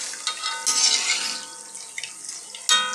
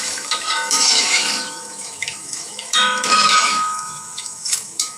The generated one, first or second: second